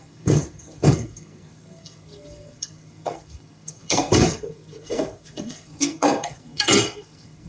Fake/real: fake